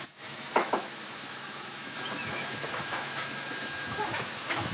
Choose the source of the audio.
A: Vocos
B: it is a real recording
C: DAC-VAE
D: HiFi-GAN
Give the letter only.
C